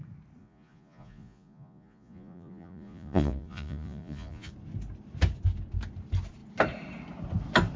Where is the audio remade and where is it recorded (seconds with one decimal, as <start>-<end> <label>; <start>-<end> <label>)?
0.0-0.4 recorded; 0.4-4.5 remade; 4.5-7.8 recorded